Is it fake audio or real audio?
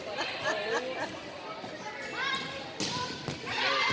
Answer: real